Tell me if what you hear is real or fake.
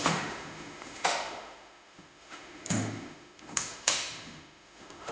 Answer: fake